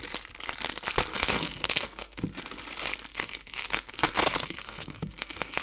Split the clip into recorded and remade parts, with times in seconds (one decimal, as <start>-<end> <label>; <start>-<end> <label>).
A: 0.0-1.1 recorded; 1.1-2.2 remade; 2.2-3.1 recorded; 3.1-5.6 remade